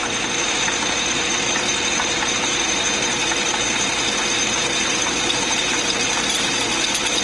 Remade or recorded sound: remade